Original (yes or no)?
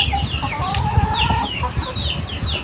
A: yes